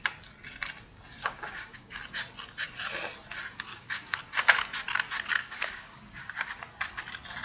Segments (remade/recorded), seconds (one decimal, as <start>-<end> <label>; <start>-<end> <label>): 0.0-1.2 recorded; 1.2-2.0 remade; 2.0-3.7 recorded; 3.7-4.2 remade; 4.2-5.4 recorded; 5.4-6.6 remade; 6.6-7.4 recorded